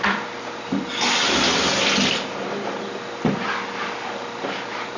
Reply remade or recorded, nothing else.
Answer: recorded